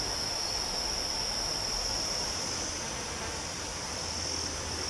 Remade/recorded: recorded